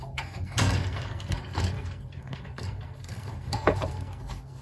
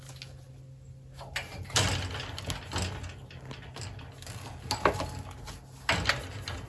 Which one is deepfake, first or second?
first